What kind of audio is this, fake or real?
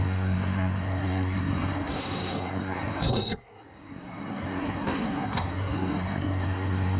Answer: fake